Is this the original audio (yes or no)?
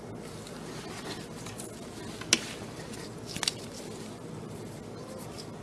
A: yes